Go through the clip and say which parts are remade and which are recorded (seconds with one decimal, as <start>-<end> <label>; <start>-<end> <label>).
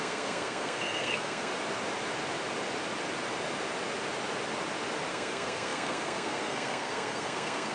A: 0.0-1.5 remade; 1.5-5.1 recorded; 5.1-7.7 remade